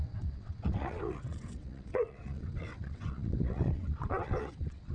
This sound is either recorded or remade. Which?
remade